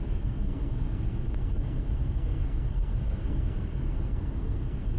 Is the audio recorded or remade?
remade